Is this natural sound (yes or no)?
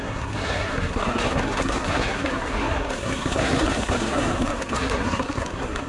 no